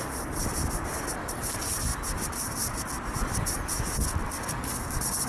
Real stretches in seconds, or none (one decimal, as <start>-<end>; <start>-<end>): 0.0-5.3